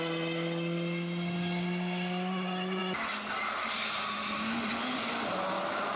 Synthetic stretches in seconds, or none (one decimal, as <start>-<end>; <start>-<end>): none